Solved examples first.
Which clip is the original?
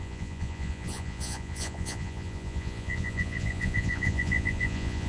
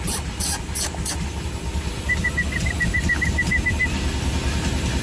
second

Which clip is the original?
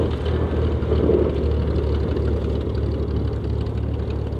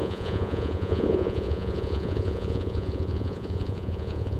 first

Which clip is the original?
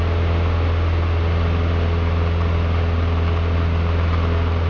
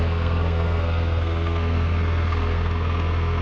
first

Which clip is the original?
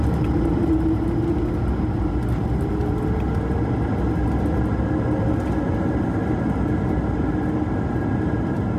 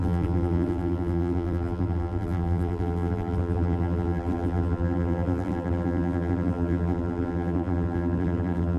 first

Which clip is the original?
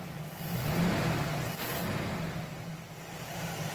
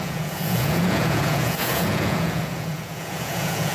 first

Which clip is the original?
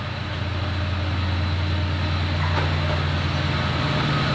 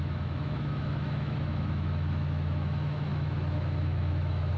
first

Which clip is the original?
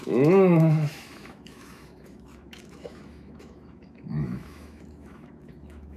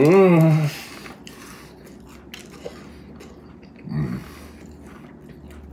second